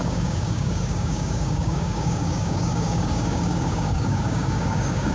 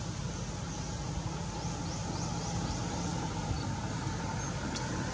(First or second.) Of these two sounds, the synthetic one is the first